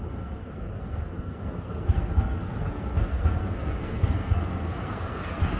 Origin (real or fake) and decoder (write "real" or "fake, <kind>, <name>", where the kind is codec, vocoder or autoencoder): fake, codec, SNAC